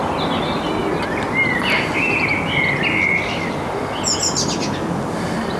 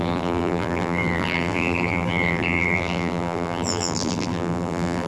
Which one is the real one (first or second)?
first